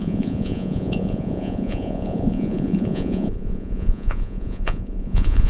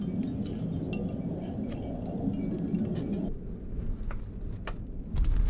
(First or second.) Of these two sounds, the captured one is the second